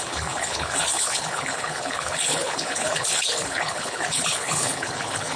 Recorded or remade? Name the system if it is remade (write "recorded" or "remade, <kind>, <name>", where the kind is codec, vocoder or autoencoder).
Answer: remade, codec, HILCodec